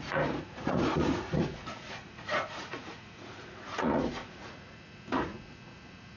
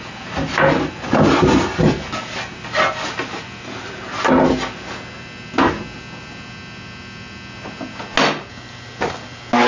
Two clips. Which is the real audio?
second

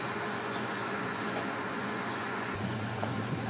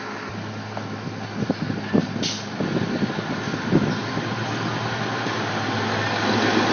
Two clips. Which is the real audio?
second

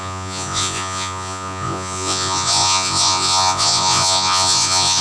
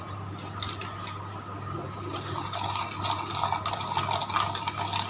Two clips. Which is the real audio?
second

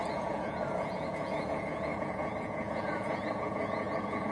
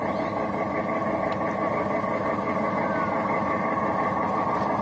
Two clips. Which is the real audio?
second